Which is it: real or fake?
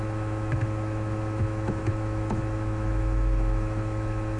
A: fake